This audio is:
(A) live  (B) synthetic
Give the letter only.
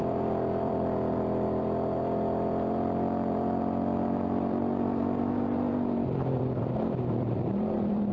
B